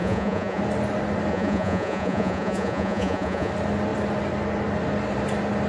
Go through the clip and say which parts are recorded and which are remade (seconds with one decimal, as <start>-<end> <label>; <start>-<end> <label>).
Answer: 0.0-0.6 remade; 0.6-1.3 recorded; 1.3-3.5 remade; 3.5-5.7 recorded